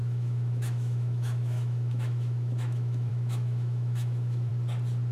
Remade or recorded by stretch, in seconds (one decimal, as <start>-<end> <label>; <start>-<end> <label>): 0.0-4.5 remade; 4.5-5.1 recorded